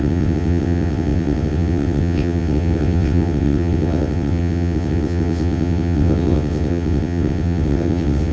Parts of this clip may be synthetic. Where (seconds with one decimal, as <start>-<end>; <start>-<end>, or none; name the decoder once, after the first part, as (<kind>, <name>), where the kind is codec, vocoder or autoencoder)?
0.0-8.3 (vocoder, WaveNeXt)